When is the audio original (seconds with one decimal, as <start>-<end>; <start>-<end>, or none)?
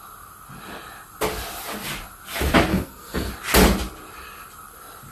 0.0-2.7; 3.3-5.1